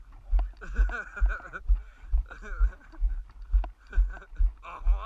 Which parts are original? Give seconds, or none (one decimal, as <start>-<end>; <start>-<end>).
0.0-1.6; 2.8-5.1